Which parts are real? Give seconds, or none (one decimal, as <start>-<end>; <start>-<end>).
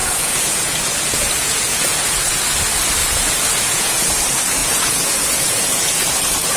2.6-3.0; 4.1-4.6